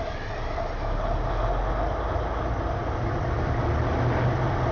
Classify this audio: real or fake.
real